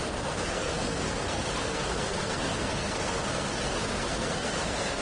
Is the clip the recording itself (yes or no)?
no